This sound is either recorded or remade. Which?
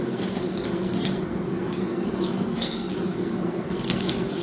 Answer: remade